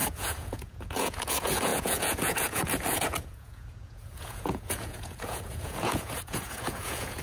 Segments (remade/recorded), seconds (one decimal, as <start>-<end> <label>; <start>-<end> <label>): 0.0-7.2 remade